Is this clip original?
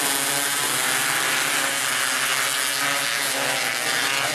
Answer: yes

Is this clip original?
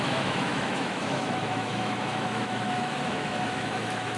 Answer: no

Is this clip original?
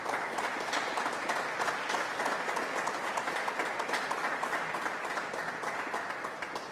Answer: yes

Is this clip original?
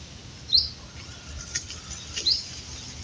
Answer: yes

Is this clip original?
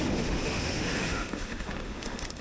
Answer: no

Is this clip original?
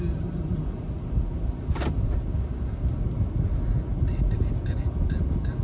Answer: yes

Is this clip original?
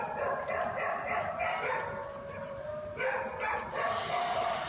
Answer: yes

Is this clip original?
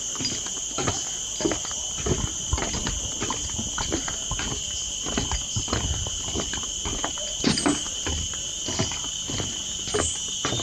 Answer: yes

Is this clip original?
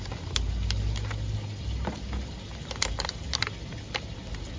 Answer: yes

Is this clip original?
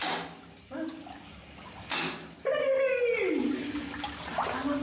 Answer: yes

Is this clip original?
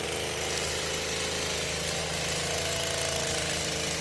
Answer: yes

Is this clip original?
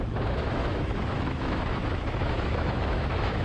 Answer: no